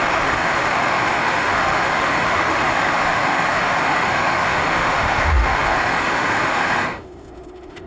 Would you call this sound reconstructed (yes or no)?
yes